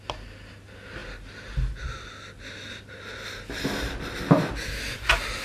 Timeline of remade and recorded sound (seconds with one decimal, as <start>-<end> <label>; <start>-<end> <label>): 0.0-5.4 recorded